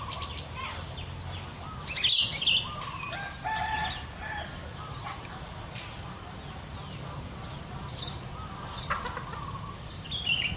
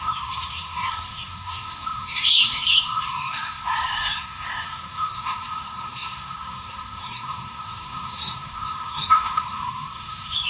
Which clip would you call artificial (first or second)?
second